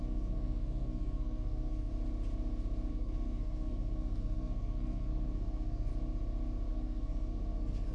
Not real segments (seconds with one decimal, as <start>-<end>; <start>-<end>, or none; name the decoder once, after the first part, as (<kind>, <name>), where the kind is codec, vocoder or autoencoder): 0.0-1.9 (codec, SNAC); 2.9-5.9; 6.7-7.9